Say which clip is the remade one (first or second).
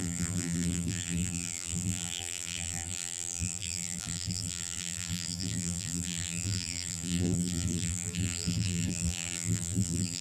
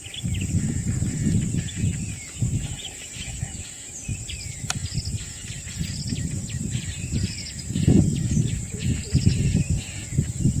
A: first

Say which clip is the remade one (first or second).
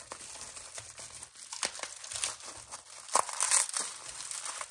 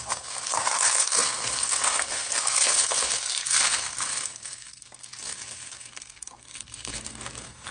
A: second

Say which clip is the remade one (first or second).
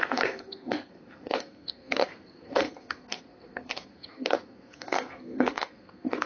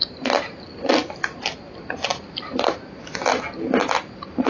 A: first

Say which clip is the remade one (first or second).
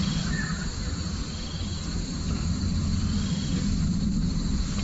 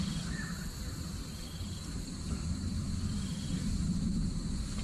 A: second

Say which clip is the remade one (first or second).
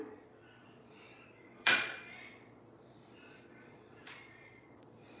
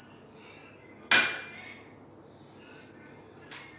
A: first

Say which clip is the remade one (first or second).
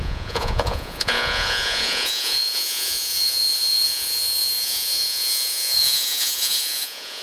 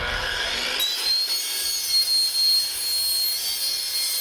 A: first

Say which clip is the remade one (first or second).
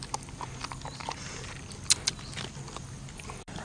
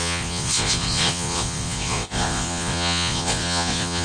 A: second